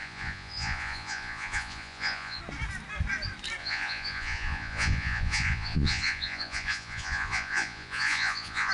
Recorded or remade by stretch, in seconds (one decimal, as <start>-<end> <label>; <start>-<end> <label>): 0.0-2.4 remade; 2.4-3.6 recorded; 3.6-8.7 remade